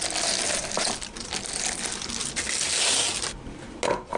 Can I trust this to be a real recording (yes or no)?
yes